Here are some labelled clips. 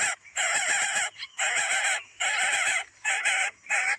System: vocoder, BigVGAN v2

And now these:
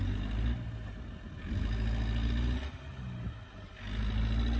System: none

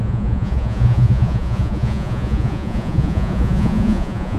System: vocoder, Vocos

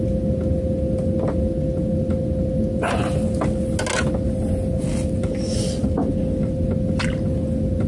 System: none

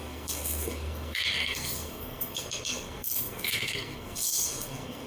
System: codec, SNAC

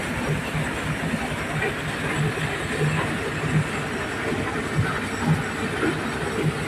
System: none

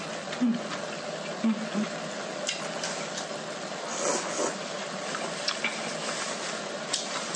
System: none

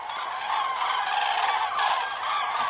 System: none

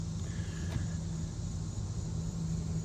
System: none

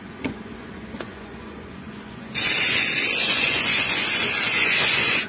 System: vocoder, Vocos